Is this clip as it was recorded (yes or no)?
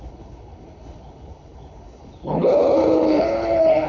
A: no